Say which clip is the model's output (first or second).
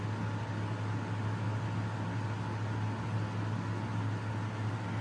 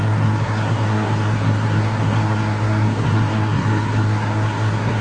second